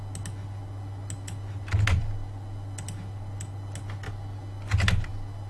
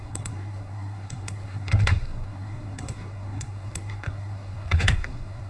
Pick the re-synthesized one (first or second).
second